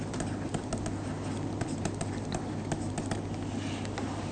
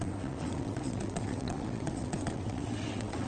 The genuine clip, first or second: first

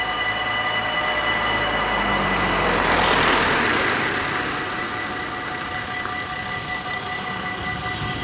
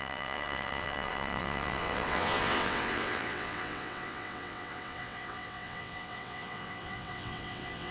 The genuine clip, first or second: first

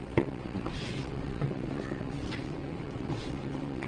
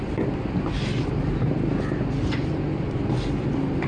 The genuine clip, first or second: second